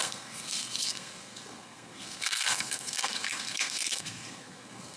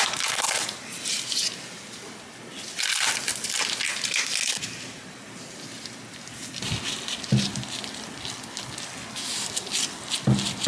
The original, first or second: second